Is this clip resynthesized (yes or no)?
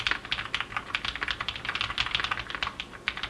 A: no